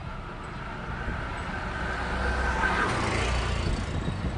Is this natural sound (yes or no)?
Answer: yes